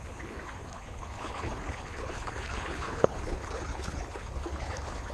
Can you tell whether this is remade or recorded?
remade